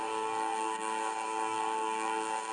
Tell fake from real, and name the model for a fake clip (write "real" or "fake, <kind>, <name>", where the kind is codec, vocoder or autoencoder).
fake, codec, DAC